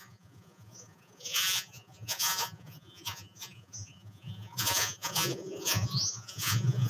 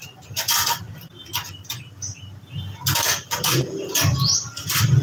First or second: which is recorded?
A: second